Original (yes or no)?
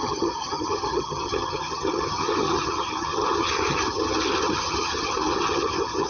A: no